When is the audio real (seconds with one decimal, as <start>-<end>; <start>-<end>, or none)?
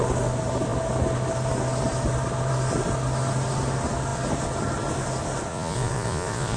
0.0-5.5